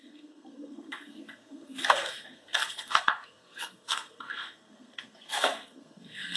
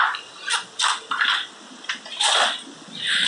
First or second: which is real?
second